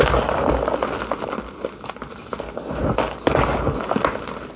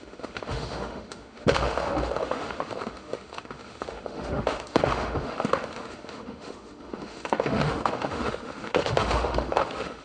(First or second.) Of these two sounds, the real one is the first